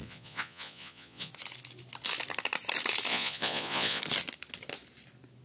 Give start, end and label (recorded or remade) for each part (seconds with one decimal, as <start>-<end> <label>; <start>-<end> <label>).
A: 0.0-1.3 remade; 1.3-3.1 recorded; 3.1-4.0 remade; 4.0-5.4 recorded